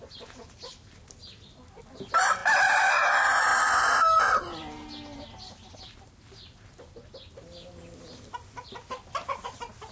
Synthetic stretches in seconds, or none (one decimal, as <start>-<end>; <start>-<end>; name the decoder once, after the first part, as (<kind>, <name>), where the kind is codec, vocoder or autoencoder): 2.4-3.0 (vocoder, BigVGAN v2)